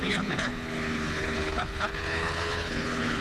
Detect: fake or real fake